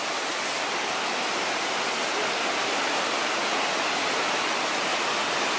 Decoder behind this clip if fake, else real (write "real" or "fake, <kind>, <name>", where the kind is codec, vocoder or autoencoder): real